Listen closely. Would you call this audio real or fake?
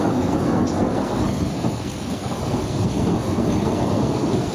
fake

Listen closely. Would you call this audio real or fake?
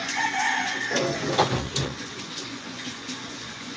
fake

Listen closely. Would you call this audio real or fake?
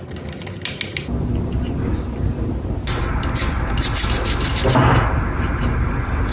real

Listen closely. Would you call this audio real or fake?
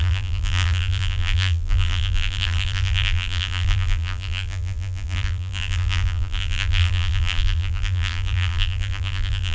fake